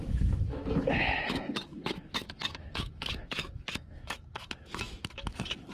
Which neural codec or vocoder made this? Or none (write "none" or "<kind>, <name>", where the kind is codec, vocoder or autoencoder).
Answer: autoencoder, DAC-VAE